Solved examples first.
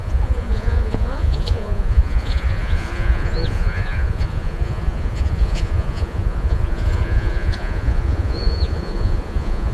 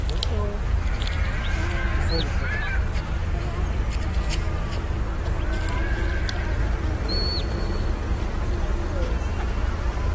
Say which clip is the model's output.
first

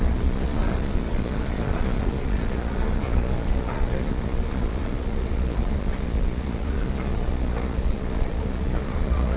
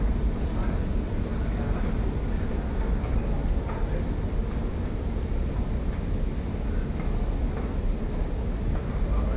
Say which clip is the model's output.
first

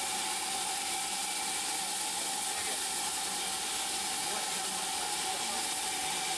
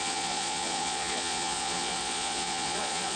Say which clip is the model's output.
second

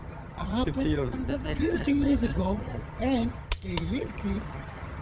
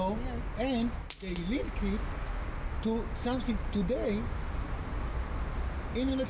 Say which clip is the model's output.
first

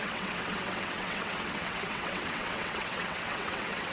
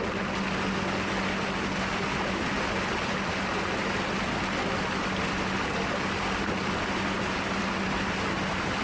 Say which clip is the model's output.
first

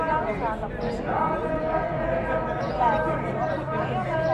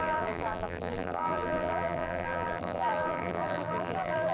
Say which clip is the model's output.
second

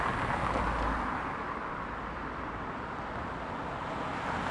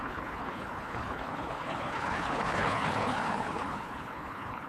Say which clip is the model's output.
second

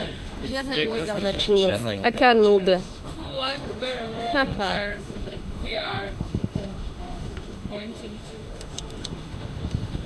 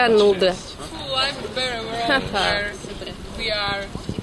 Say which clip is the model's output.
first